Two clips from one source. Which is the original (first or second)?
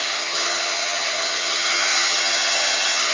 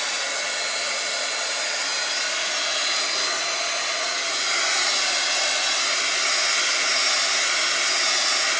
second